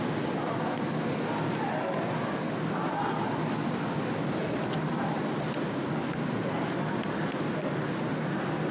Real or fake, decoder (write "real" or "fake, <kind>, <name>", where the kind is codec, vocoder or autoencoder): real